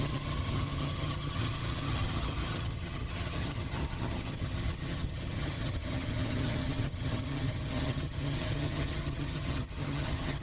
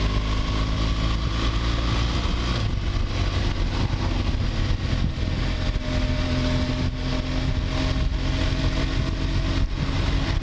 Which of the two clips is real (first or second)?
second